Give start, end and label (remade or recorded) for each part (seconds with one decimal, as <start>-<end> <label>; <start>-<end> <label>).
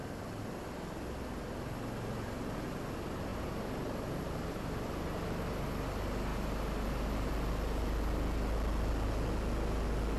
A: 0.0-10.2 recorded